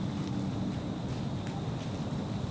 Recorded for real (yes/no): yes